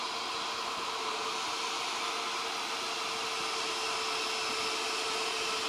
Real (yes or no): yes